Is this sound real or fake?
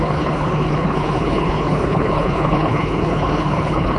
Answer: fake